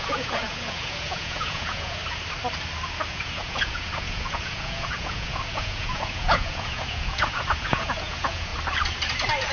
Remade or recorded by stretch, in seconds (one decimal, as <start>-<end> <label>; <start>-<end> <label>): 0.0-2.0 remade; 2.0-3.1 recorded; 3.1-8.5 remade; 8.5-9.5 recorded